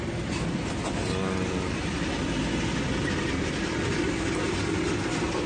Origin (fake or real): real